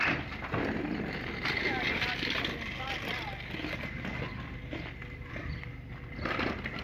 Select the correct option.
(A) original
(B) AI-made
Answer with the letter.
A